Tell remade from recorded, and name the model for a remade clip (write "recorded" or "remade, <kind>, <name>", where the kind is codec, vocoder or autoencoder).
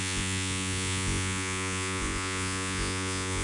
remade, vocoder, Vocos